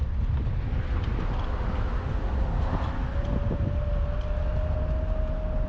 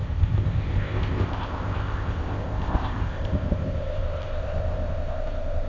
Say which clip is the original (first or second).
first